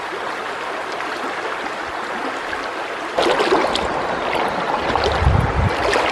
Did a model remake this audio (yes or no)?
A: no